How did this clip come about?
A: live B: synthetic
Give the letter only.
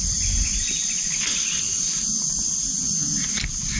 A